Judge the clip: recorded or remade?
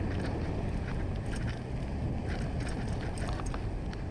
recorded